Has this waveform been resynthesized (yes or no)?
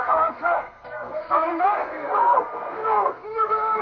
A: yes